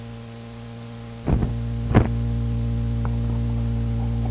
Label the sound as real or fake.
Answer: real